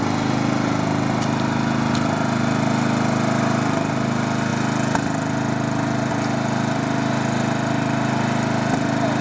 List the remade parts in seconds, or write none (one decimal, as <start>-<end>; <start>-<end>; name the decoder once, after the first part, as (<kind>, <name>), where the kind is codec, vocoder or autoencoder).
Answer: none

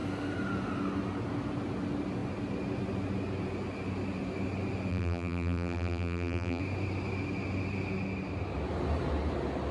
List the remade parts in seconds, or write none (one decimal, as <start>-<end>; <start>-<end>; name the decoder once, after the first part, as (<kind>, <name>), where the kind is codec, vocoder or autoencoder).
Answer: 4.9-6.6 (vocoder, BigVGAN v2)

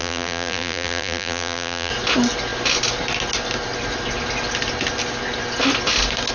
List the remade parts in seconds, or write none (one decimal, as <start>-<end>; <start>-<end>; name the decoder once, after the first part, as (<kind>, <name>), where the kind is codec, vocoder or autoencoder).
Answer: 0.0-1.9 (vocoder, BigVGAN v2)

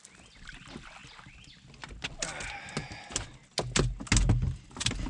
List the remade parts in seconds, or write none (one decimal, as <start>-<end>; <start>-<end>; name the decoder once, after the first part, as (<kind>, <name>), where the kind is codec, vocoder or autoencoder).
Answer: none

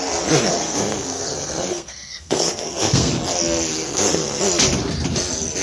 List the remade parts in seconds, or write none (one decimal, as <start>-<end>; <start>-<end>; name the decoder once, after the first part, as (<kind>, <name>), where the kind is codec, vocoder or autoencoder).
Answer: 0.5-3.1 (codec, SNAC); 3.7-4.4

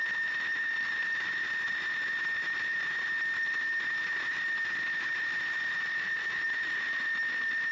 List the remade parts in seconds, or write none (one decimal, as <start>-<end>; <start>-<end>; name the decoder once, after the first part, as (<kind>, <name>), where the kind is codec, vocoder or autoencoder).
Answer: none